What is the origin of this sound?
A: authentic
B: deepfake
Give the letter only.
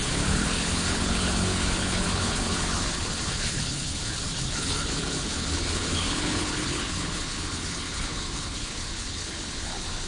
B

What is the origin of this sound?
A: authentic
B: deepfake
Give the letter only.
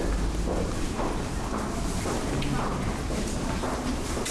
A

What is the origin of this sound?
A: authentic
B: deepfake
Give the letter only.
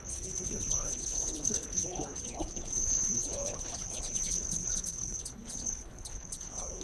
B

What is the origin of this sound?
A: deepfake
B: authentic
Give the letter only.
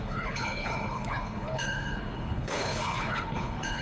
A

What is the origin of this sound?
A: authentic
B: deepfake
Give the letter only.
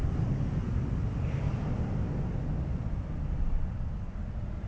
A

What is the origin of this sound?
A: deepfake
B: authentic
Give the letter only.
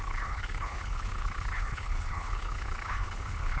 A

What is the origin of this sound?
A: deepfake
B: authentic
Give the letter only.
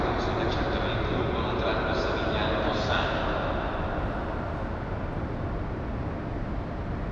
B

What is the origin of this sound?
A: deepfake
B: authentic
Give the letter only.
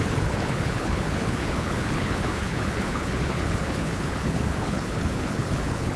A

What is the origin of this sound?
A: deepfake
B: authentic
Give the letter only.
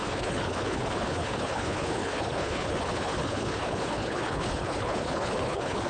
A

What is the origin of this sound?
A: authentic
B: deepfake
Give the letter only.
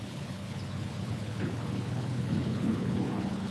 B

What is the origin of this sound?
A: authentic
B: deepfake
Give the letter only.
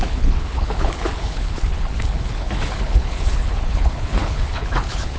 B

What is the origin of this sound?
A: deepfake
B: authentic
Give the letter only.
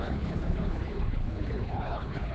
A